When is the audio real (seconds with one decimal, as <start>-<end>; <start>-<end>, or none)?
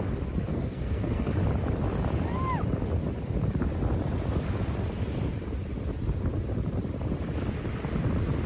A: 0.0-0.5; 1.3-8.5